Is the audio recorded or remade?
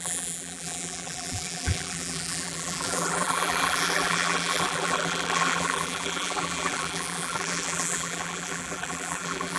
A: remade